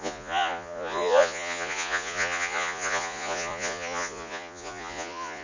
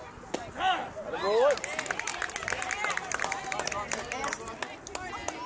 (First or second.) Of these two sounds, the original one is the second